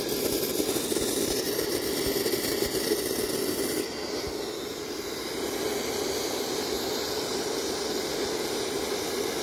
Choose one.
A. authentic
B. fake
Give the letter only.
A